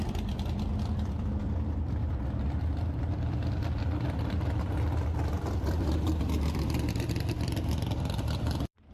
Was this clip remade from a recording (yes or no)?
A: yes